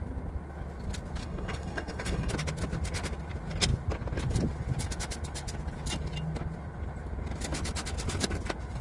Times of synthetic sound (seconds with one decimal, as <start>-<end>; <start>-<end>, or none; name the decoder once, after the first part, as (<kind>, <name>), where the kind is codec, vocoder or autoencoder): 1.2-2.3 (codec, SNAC)